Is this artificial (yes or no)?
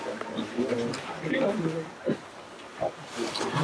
no